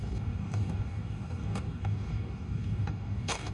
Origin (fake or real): fake